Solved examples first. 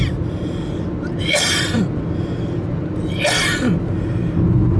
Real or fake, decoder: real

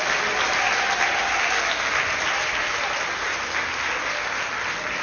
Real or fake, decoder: real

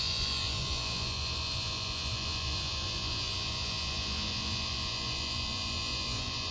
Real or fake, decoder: fake, vocoder, Vocos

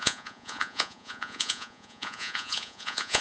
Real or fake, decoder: fake, vocoder, Vocos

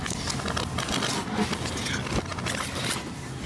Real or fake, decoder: real